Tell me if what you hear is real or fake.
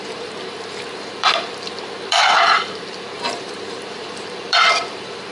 fake